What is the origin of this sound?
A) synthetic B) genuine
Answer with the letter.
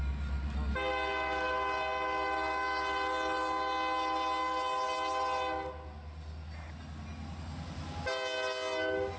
B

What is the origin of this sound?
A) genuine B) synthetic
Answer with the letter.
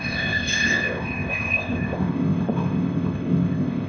B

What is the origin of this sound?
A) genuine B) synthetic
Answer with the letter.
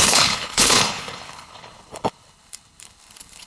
B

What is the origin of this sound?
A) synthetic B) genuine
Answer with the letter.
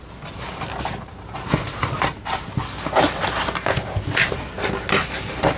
B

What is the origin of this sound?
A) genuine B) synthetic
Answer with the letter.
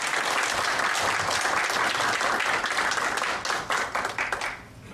A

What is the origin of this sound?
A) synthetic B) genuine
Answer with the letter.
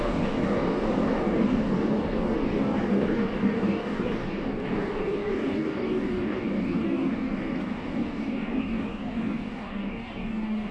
A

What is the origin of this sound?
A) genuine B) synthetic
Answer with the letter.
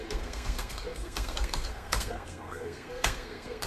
B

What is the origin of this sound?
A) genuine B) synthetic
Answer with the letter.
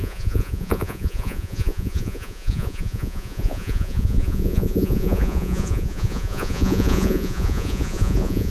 B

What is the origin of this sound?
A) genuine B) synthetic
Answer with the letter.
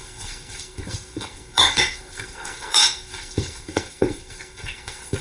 B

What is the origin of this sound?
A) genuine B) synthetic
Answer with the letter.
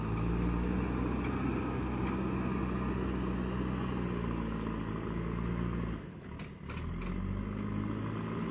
A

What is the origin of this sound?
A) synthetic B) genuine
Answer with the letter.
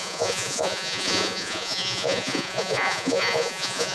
A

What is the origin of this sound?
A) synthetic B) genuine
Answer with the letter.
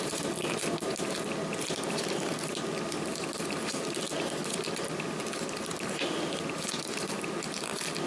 B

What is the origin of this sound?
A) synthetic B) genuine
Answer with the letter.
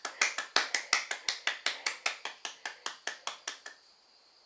B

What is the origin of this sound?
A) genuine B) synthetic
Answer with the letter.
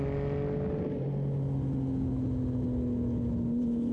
A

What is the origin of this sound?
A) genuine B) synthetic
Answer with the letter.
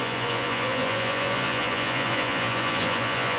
B